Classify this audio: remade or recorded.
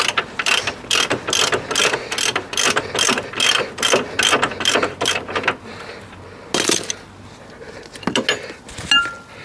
recorded